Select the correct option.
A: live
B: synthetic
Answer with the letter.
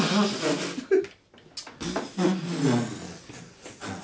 A